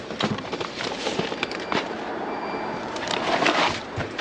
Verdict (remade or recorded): remade